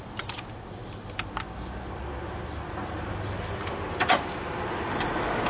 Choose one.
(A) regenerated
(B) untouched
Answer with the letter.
B